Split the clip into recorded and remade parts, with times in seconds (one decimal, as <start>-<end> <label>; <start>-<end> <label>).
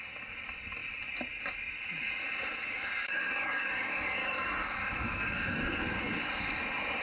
0.0-2.8 recorded; 2.8-3.3 remade; 3.3-4.2 recorded; 4.2-6.4 remade; 6.4-7.0 recorded